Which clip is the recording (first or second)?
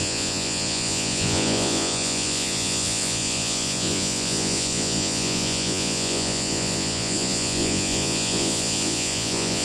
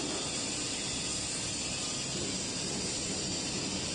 second